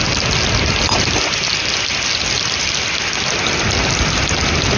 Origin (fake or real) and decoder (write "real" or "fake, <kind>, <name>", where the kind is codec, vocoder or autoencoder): real